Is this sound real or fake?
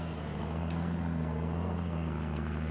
fake